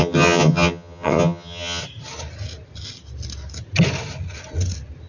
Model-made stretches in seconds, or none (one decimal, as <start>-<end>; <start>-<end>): 0.0-1.8

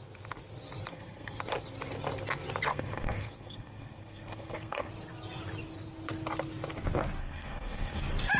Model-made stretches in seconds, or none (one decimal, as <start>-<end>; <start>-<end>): 0.9-1.4; 2.7-4.9; 7.2-8.0

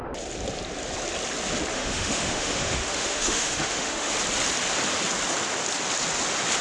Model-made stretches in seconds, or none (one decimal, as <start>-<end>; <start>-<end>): 1.7-4.1